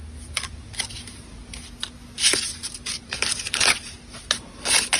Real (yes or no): yes